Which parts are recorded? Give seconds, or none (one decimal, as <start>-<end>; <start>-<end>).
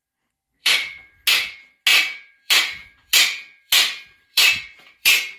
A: 0.0-0.6; 1.2-1.9